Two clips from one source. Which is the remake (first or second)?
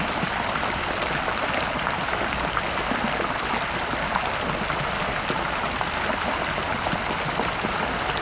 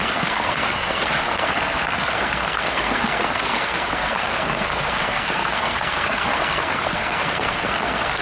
second